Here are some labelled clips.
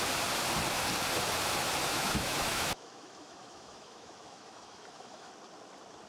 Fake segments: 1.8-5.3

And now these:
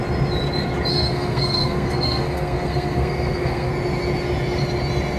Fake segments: 0.9-3.7

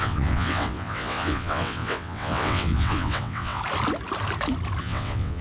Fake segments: 0.0-3.6; 4.8-5.4

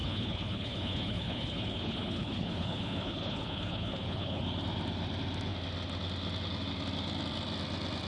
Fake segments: 0.0-4.4